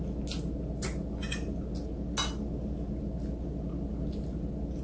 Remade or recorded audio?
recorded